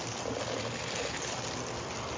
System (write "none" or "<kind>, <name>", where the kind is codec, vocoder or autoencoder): none